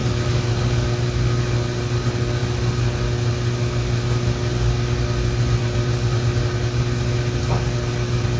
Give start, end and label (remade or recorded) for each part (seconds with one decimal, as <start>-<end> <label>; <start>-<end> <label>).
0.0-8.4 recorded